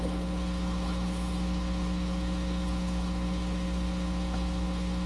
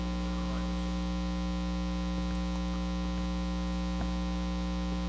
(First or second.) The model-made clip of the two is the first